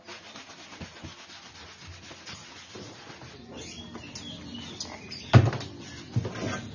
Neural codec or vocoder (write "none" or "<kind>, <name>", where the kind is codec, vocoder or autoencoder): none